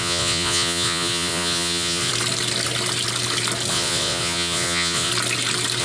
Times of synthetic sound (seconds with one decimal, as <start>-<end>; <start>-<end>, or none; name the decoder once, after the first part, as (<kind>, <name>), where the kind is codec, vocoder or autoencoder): 0.0-2.1 (vocoder, Vocos); 3.7-5.1